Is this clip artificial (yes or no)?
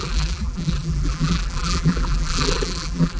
yes